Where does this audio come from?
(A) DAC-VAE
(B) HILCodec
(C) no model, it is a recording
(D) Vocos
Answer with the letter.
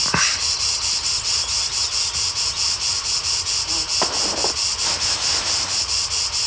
C